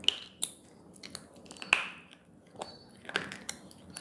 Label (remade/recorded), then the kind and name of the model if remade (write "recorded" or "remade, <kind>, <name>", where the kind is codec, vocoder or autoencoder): recorded